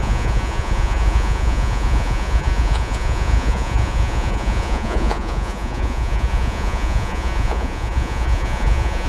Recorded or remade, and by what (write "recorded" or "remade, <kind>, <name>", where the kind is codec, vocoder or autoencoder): remade, vocoder, Vocos